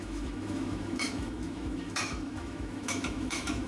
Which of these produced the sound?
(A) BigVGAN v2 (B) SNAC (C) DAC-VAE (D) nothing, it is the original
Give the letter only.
C